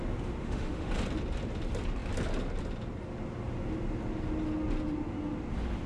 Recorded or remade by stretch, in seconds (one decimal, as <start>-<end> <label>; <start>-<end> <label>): 0.0-0.4 recorded; 0.4-0.9 remade; 0.9-5.9 recorded